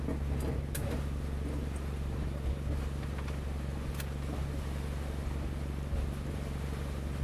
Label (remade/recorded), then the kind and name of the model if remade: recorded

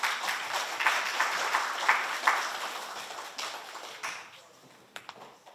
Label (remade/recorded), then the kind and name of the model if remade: recorded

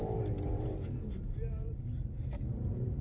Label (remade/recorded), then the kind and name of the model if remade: remade, vocoder, BigVGAN v2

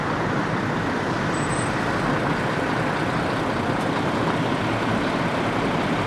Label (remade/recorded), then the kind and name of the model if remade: remade, vocoder, BigVGAN v2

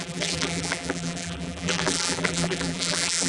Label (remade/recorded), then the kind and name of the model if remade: remade, vocoder, BigVGAN v2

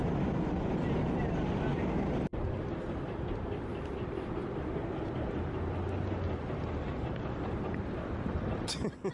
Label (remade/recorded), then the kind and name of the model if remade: recorded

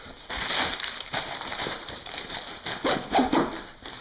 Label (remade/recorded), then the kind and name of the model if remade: remade, vocoder, BigVGAN v2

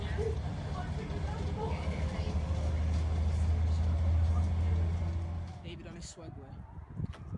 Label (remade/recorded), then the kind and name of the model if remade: recorded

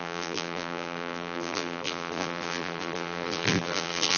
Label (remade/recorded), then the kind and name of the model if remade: remade, vocoder, BigVGAN v2